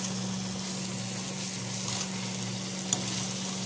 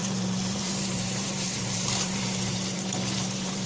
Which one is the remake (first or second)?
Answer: second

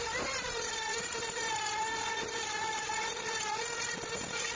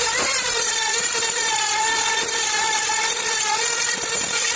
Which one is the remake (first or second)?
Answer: second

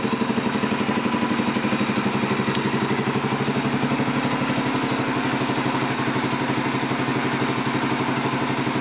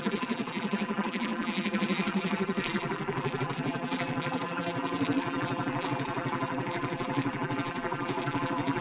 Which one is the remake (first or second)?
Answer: second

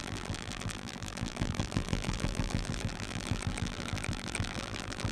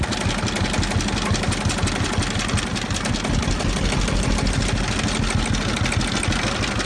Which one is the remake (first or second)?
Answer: first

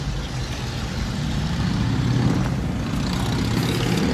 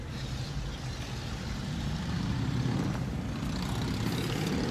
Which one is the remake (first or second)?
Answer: second